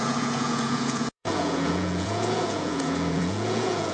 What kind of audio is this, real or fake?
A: fake